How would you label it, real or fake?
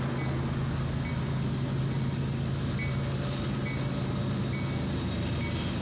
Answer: real